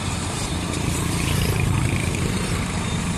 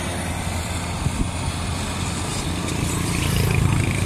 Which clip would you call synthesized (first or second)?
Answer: first